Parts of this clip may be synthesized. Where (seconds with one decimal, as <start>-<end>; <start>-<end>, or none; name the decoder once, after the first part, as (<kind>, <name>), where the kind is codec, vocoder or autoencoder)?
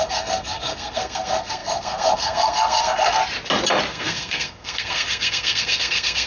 0.0-3.2 (codec, SNAC); 3.9-6.3